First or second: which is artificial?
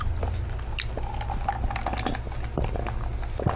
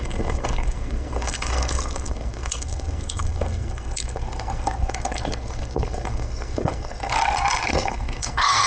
second